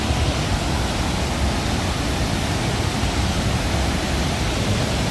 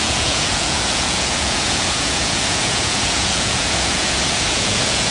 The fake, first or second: second